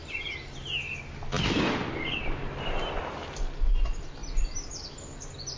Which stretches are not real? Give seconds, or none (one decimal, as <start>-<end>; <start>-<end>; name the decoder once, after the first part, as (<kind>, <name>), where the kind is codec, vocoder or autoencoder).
3.1-5.6 (vocoder, BigVGAN v2)